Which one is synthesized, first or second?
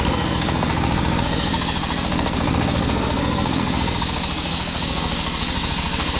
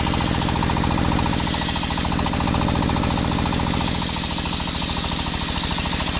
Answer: first